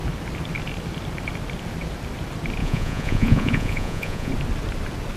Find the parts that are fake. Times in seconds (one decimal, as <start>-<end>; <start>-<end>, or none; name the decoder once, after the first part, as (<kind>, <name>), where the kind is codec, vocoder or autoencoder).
2.6-4.3 (vocoder, Vocos)